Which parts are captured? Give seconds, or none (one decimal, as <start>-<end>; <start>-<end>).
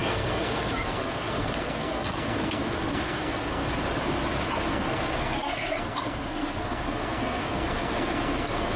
3.6-4.7